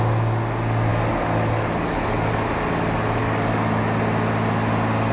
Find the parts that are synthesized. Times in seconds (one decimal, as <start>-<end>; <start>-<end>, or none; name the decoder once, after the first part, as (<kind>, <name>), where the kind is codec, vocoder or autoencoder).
0.9-2.3 (codec, DAC); 3.2-3.8